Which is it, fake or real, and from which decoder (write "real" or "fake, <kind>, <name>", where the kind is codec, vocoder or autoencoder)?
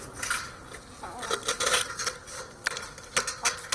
real